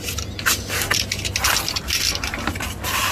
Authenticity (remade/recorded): recorded